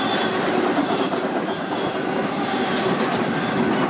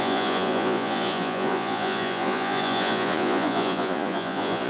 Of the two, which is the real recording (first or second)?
first